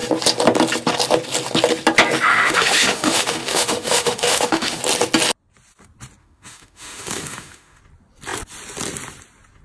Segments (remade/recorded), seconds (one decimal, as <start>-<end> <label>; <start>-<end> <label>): 0.0-2.3 recorded; 2.3-4.8 remade; 4.8-6.2 recorded; 6.2-7.8 remade; 7.8-9.6 recorded